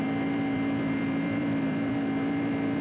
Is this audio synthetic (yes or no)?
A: yes